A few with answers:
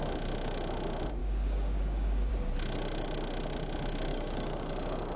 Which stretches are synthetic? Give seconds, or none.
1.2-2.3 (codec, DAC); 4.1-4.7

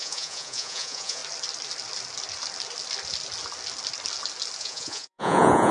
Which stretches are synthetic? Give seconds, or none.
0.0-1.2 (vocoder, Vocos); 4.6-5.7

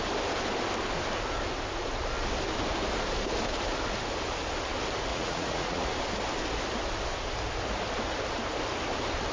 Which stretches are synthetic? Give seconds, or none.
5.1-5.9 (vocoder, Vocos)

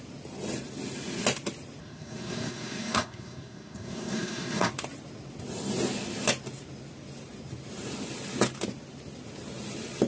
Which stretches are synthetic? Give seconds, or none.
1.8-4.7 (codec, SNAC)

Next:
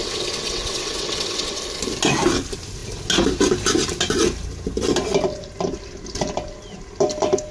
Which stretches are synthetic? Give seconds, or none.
0.0-1.6 (vocoder, WaveNeXt)

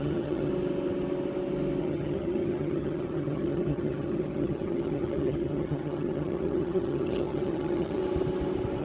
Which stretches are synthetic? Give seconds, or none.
0.0-0.5 (vocoder, HiFi-GAN); 1.8-8.0

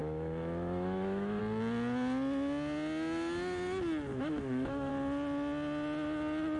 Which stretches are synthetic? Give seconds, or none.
0.0-1.4 (autoencoder, DAC-VAE); 4.1-4.9

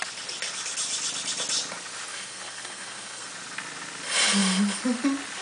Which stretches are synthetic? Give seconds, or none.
2.1-3.3 (codec, SNAC)